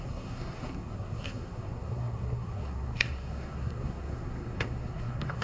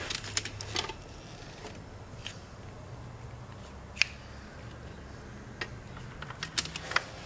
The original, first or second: second